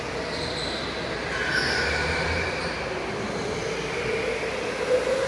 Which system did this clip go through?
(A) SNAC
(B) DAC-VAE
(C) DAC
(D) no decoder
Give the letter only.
D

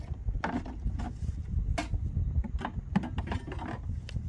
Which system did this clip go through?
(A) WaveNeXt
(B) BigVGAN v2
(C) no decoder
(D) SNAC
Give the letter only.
C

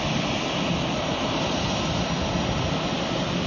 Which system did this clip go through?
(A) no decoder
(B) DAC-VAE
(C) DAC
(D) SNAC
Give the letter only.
A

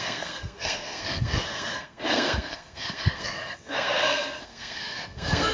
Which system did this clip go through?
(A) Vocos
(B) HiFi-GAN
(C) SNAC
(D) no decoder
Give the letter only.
C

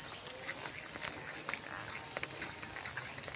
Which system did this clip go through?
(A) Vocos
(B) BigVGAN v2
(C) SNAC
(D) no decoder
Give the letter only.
D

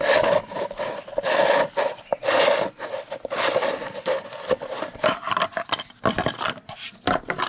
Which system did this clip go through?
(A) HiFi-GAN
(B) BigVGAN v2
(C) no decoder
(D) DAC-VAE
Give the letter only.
C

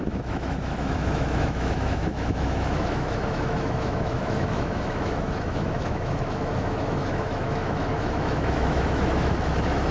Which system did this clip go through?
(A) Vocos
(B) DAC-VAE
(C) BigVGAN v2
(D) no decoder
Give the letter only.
B